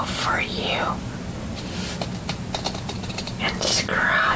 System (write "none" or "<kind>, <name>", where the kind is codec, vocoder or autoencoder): none